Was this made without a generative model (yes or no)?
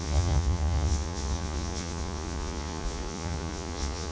no